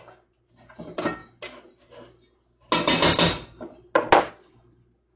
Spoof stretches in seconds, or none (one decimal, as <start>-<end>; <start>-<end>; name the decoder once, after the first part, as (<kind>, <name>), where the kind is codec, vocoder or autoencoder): none